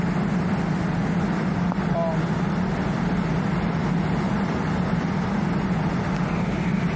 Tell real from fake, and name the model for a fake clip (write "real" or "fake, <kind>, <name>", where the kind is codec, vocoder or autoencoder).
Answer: real